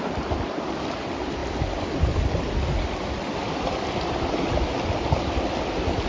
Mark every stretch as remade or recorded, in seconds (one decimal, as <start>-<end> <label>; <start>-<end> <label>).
0.0-6.1 recorded

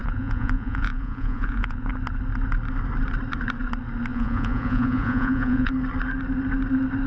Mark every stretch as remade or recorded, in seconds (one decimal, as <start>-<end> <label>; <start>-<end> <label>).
0.0-1.9 remade; 1.9-4.1 recorded; 4.1-5.7 remade; 5.7-7.1 recorded